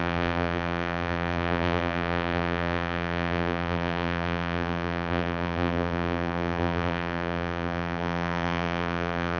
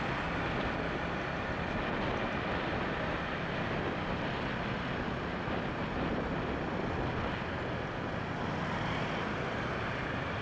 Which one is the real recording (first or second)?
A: second